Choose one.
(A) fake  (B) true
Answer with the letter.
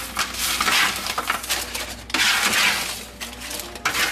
B